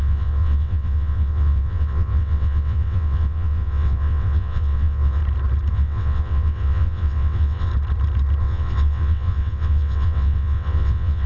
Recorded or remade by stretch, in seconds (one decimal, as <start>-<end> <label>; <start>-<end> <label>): 0.0-5.2 remade; 5.2-5.7 recorded; 5.7-7.7 remade; 7.7-8.4 recorded; 8.4-11.3 remade